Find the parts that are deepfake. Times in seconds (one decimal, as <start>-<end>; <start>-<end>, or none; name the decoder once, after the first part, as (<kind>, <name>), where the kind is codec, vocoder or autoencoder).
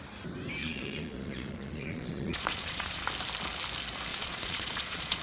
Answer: 0.6-3.1 (vocoder, Vocos); 4.1-5.2